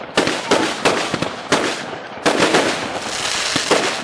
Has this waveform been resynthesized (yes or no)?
no